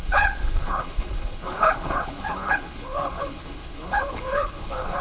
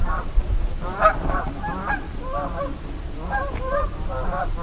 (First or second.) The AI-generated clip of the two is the first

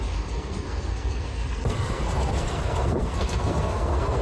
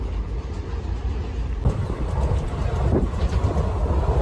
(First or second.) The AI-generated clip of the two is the first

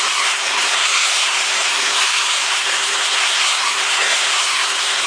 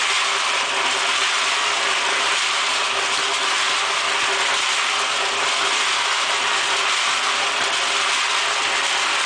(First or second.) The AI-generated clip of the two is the first